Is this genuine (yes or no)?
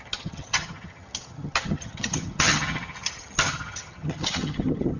no